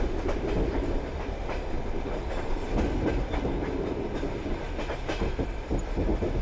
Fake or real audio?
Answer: real